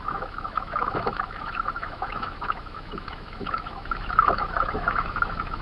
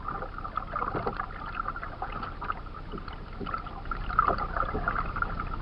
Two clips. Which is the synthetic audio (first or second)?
first